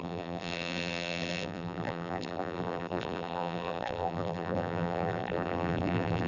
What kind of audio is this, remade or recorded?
remade